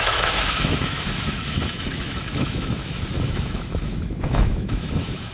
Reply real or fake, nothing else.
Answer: fake